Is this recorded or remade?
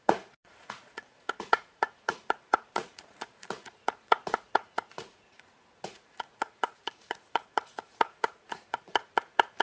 remade